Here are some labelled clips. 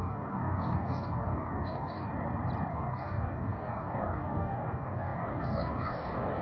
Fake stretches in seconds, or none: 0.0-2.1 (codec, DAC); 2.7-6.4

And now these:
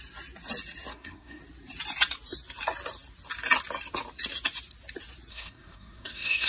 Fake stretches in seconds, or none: 0.9-1.4 (codec, SNAC); 5.3-6.5

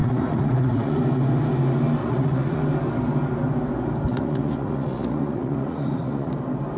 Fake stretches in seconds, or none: 0.0-1.0 (vocoder, Vocos); 2.0-2.6; 4.1-6.3

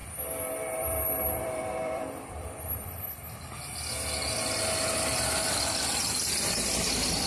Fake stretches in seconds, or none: 0.0-3.2 (vocoder, BigVGAN v2)